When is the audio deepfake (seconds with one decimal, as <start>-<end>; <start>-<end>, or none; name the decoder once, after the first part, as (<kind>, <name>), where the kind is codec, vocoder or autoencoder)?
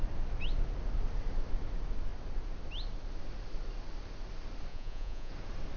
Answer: 4.7-5.3 (vocoder, Vocos)